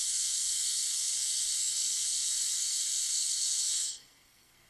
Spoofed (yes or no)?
yes